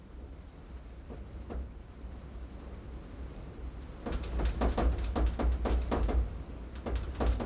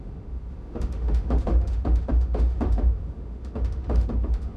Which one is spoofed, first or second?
second